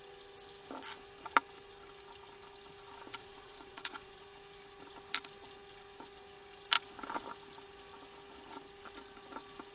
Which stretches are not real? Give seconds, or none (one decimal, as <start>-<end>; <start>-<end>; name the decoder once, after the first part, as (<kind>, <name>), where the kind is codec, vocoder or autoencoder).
3.2-4.2 (vocoder, Vocos)